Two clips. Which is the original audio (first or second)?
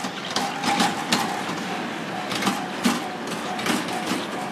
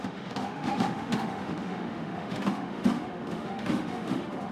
first